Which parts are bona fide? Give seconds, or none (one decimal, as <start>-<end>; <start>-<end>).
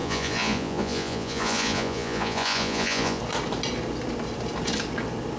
3.2-5.4